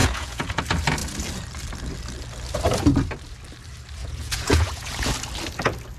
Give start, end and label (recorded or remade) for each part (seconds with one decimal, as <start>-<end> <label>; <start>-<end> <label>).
0.0-0.6 remade; 0.6-4.0 recorded; 4.0-5.1 remade; 5.1-6.0 recorded